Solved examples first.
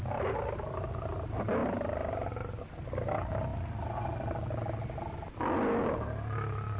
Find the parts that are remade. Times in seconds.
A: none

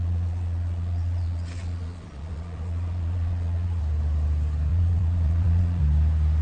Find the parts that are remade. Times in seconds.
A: 0.0-3.8 (vocoder, Vocos); 4.7-5.8

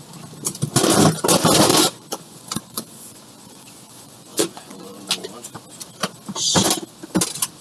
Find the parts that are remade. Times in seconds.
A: 1.7-5.1 (vocoder, Vocos)